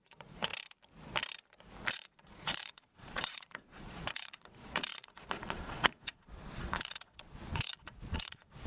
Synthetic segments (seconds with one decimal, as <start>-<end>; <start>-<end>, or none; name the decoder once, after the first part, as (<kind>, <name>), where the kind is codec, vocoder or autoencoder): 0.0-0.5 (vocoder, Vocos); 1.9-8.7